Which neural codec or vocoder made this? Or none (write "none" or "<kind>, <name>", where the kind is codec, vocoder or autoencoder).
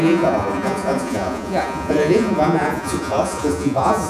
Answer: vocoder, Vocos